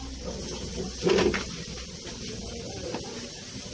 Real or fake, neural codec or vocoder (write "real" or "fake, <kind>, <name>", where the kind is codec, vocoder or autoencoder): real